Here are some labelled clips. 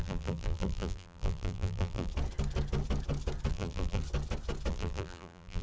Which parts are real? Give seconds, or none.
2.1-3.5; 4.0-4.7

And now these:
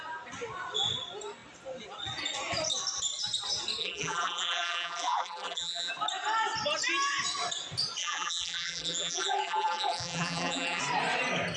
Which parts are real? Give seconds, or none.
0.0-3.8; 5.9-8.0; 10.8-11.6